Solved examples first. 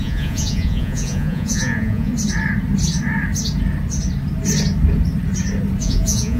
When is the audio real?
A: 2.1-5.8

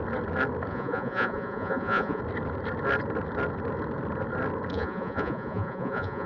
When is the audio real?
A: 0.0-0.7; 2.2-4.7

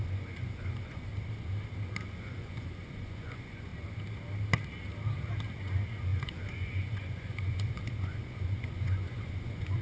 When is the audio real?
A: 1.1-2.1; 3.7-5.6